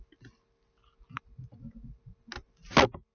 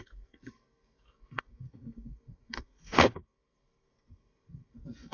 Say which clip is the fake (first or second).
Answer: second